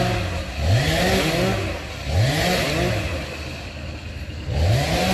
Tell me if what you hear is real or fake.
real